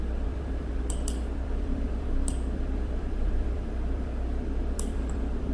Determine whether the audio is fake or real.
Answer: fake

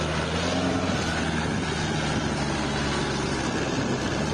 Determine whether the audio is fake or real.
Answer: real